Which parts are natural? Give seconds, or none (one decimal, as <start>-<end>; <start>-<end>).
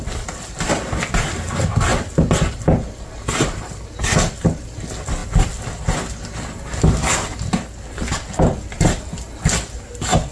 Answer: 0.0-10.3